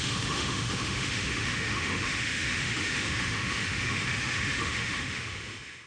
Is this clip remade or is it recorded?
remade